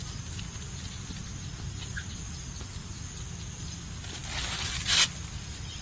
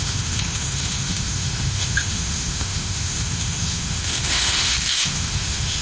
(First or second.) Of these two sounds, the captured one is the first